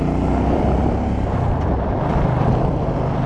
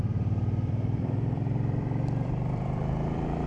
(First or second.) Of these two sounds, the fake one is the second